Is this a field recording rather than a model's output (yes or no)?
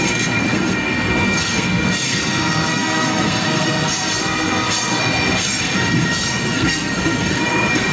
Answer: no